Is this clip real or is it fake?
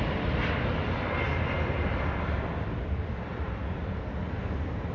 real